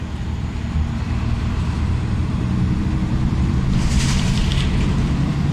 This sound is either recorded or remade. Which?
remade